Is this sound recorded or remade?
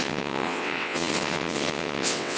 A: remade